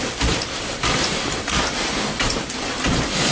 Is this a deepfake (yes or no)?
yes